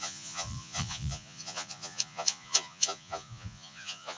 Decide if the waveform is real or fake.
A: fake